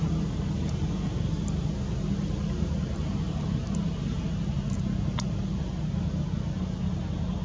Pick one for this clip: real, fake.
real